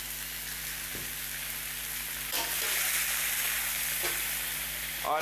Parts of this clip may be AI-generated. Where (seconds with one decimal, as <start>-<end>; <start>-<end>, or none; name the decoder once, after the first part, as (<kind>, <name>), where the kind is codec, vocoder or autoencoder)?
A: none